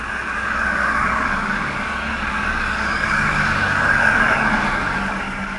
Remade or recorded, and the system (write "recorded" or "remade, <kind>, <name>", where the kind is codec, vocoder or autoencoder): remade, codec, DAC